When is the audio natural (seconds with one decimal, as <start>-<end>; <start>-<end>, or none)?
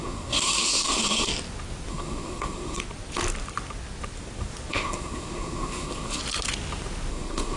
1.3-1.9; 2.8-4.7; 6.2-7.1